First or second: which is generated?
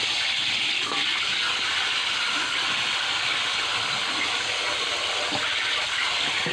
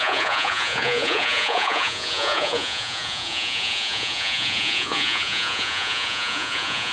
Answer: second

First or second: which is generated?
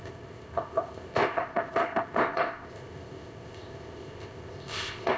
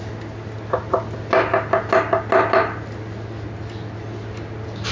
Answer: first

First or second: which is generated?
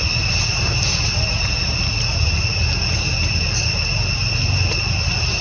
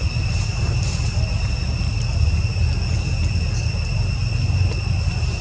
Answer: second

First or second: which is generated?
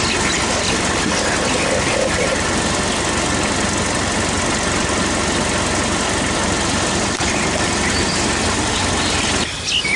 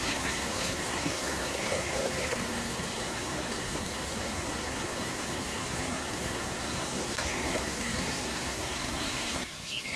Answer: second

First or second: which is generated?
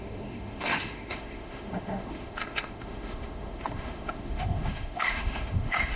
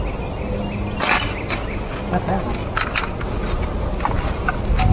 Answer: first